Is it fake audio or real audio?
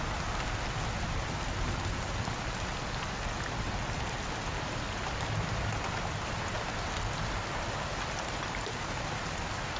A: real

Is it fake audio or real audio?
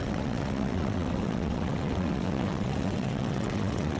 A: fake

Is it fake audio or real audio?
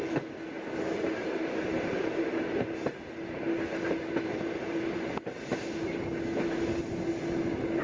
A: real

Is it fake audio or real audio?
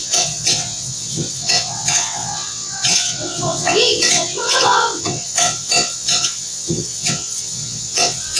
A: fake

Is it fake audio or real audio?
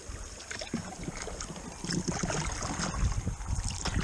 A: real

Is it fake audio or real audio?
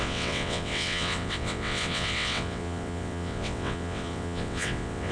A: fake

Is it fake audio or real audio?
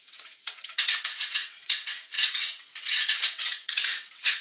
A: fake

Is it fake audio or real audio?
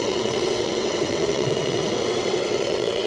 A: fake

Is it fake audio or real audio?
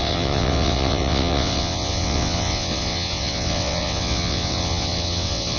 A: fake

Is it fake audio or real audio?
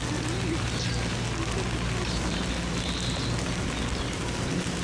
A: real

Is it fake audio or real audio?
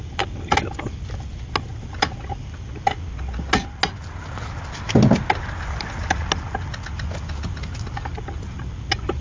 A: real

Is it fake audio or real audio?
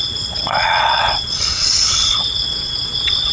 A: fake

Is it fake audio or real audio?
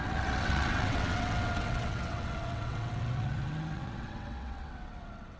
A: fake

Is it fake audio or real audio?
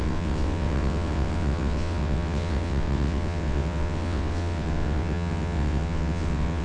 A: fake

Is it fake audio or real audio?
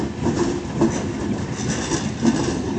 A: real